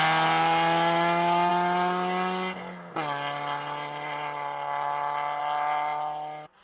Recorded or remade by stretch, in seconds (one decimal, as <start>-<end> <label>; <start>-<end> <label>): 0.0-6.6 recorded